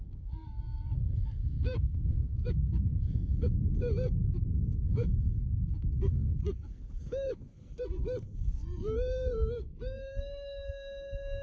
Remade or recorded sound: remade